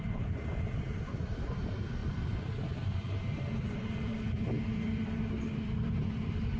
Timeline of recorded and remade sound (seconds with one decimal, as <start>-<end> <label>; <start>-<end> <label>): 0.0-2.0 remade; 2.0-3.7 recorded; 3.7-6.6 remade